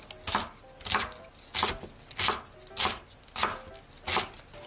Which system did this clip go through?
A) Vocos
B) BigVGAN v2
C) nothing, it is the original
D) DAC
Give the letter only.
C